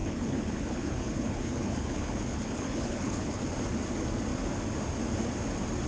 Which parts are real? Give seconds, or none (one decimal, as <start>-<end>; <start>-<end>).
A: 3.4-5.9